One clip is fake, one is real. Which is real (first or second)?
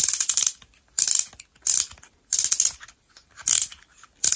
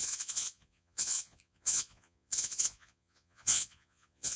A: first